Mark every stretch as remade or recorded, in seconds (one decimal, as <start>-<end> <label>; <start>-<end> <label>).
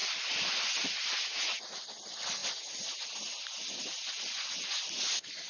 0.0-5.5 recorded